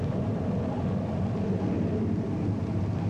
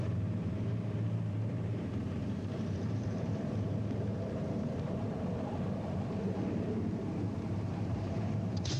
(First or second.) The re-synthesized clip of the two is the second